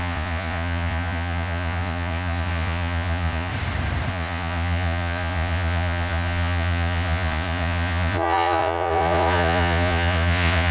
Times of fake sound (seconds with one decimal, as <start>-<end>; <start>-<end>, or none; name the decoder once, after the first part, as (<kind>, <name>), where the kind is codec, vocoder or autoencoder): 0.0-3.5 (vocoder, Vocos); 4.1-10.7